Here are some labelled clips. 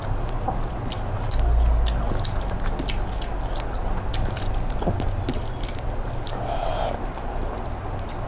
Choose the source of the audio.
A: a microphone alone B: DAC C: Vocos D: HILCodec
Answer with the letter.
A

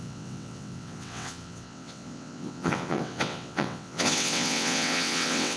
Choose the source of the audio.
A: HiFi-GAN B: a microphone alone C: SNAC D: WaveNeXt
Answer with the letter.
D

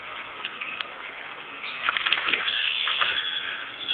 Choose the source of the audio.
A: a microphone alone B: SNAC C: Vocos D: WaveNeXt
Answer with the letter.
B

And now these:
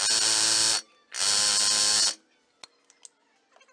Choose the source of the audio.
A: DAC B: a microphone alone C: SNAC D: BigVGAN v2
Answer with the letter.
B